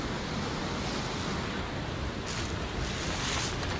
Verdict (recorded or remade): recorded